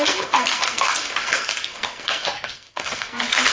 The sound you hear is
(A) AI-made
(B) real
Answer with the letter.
A